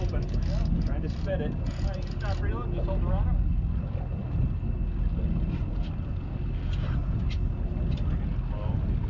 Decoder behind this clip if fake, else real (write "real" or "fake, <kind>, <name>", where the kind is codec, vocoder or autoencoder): real